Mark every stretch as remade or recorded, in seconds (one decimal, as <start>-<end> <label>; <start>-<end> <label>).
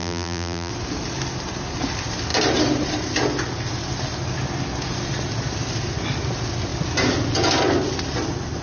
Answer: 0.0-0.7 remade; 0.7-8.6 recorded